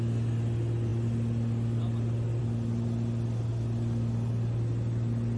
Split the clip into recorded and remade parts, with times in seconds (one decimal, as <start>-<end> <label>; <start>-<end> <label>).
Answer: 0.0-5.4 recorded